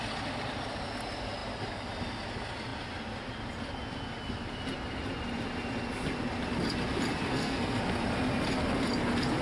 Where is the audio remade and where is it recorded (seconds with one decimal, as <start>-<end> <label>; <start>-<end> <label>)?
0.0-7.3 recorded; 7.3-7.8 remade; 7.8-9.4 recorded